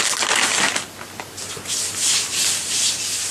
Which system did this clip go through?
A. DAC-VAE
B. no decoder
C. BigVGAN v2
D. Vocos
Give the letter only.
B